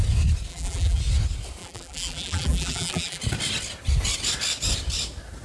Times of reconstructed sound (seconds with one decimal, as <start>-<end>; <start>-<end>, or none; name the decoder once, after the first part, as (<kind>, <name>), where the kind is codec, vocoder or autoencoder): 0.5-1.0 (vocoder, BigVGAN v2); 1.6-3.2